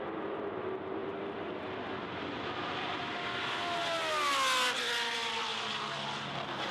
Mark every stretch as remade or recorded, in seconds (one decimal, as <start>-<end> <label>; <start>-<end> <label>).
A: 0.0-1.0 recorded; 1.0-1.6 remade; 1.6-5.2 recorded; 5.2-5.7 remade; 5.7-6.7 recorded